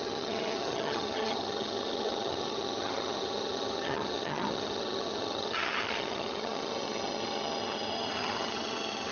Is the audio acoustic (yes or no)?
no